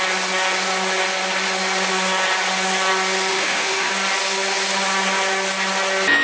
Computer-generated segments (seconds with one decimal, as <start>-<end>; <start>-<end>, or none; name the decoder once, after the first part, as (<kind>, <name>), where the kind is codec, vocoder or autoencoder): 3.3-3.9 (autoencoder, DAC-VAE)